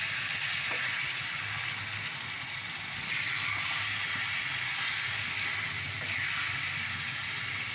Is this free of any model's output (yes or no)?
yes